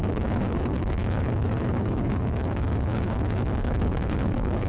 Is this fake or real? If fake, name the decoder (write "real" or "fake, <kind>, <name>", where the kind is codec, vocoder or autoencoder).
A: fake, codec, HILCodec